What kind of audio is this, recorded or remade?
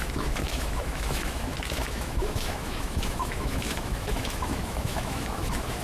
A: remade